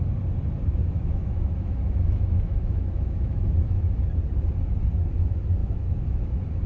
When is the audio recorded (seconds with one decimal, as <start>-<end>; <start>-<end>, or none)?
0.0-0.8; 4.0-5.6; 6.3-6.7